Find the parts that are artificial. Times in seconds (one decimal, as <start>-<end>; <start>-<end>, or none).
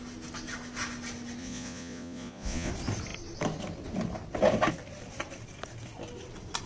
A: 1.4-2.7